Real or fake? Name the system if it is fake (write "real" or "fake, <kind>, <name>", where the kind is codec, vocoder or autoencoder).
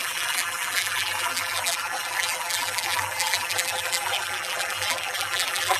fake, vocoder, BigVGAN v2